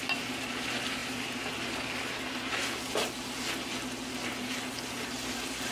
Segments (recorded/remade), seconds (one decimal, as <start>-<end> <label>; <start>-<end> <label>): 0.0-5.7 recorded

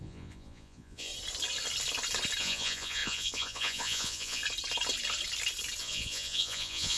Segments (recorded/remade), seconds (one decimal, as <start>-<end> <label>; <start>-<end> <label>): 0.0-1.1 remade; 1.1-2.4 recorded; 2.4-4.4 remade; 4.4-5.8 recorded; 5.8-7.0 remade

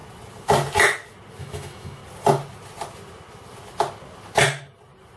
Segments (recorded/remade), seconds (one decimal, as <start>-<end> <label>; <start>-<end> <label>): 0.0-1.4 recorded; 1.4-2.0 remade; 2.0-5.2 recorded

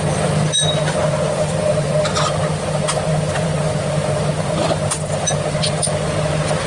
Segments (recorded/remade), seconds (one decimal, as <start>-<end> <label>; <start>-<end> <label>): 0.0-1.0 recorded; 1.0-2.1 remade; 2.1-3.1 recorded; 3.1-5.0 remade; 5.0-6.7 recorded

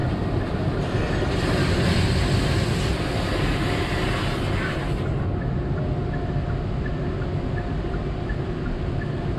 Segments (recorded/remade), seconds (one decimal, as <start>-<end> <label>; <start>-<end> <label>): 0.0-9.4 recorded